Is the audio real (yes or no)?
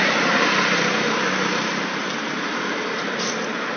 no